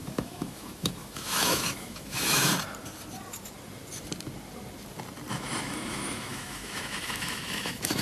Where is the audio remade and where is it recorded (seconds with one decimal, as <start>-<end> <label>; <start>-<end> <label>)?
0.0-2.5 remade; 2.5-5.3 recorded; 5.3-8.0 remade